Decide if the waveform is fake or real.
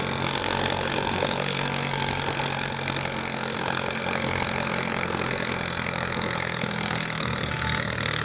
fake